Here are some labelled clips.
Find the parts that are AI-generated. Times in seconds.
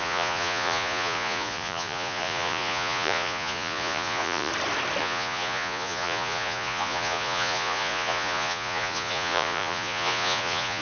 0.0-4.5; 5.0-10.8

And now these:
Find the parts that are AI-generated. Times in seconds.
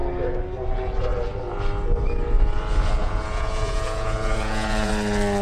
3.0-4.9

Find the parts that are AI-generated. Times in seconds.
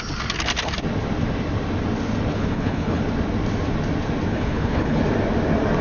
2.3-3.0; 4.3-5.0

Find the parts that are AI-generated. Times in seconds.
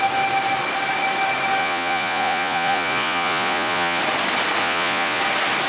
1.6-4.0; 4.6-5.2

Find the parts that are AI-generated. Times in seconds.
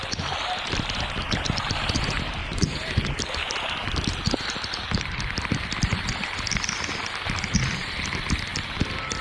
2.4-5.2